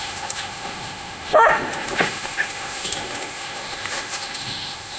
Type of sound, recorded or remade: remade